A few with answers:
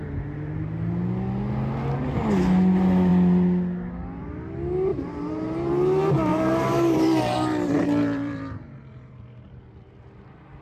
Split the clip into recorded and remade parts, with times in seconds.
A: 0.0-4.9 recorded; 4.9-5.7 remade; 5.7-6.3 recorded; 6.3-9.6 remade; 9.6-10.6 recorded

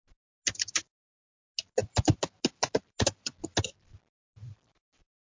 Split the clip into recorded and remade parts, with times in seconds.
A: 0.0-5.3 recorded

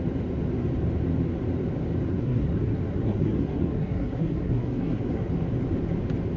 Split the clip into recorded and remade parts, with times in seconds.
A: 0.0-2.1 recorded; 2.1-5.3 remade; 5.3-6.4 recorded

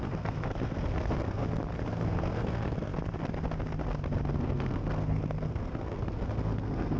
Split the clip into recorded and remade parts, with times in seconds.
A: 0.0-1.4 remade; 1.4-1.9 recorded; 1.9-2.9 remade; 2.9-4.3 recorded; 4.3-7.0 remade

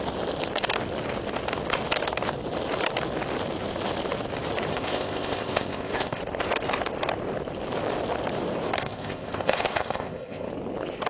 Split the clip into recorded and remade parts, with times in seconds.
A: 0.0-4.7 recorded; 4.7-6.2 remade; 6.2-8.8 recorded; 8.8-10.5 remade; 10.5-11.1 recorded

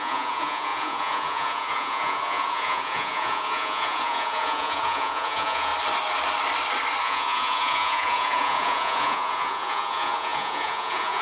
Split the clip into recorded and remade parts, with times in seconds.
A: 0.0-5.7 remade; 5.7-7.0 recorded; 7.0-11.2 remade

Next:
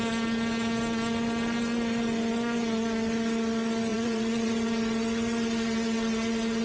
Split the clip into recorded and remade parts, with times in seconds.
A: 0.0-3.9 recorded; 3.9-4.5 remade; 4.5-6.6 recorded